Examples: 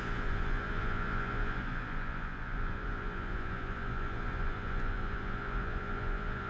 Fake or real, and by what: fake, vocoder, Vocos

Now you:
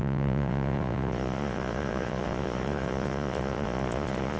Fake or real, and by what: fake, vocoder, Vocos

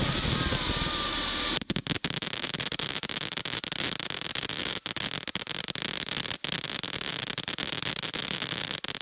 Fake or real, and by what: real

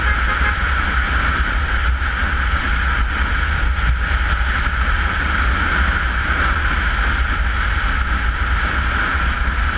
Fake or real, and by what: real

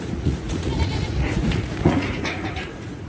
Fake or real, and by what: fake, vocoder, Vocos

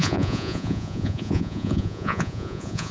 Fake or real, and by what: fake, vocoder, Vocos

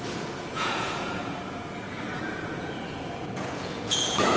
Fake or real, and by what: fake, vocoder, Vocos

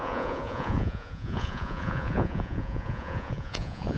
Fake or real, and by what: fake, vocoder, Vocos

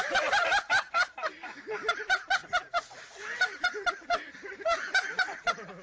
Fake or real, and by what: real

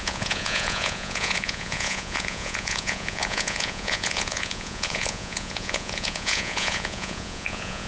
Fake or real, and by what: fake, vocoder, Vocos